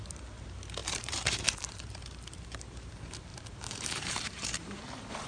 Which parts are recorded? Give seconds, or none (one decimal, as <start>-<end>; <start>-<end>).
0.0-0.8; 2.9-3.3; 4.8-5.3